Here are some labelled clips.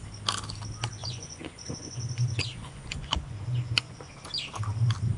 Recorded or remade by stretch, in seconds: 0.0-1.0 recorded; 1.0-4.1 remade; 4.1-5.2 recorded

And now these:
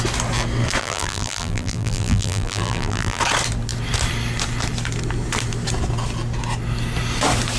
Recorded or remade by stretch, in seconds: 0.0-0.8 recorded; 0.8-3.2 remade; 3.2-7.6 recorded

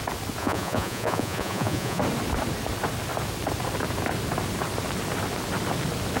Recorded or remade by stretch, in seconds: 0.0-0.4 recorded; 0.4-2.0 remade; 2.0-6.2 recorded